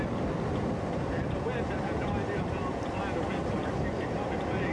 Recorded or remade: recorded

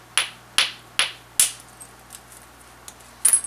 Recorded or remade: recorded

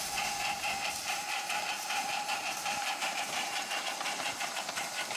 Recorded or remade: remade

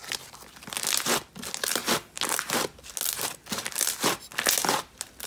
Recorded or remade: recorded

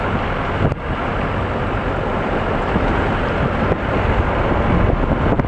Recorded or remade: recorded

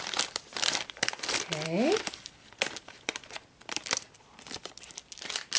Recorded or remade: remade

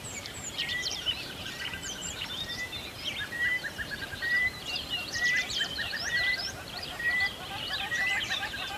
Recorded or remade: remade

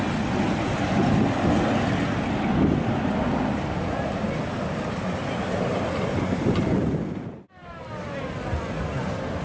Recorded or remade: recorded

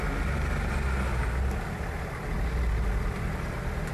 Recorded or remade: recorded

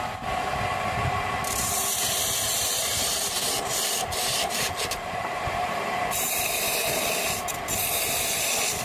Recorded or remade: remade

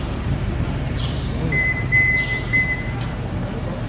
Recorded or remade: remade